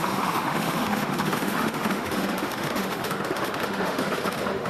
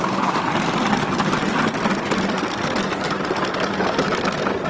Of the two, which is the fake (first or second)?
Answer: first